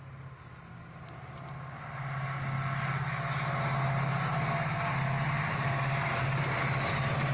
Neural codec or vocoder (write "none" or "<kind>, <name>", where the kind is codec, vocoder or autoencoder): none